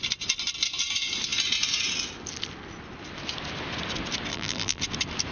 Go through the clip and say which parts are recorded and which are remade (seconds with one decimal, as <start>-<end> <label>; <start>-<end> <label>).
0.0-4.3 recorded; 4.3-4.8 remade; 4.8-5.3 recorded